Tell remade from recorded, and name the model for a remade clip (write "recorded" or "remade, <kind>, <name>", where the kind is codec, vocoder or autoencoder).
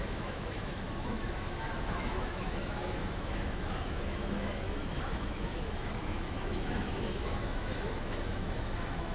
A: remade, autoencoder, DAC-VAE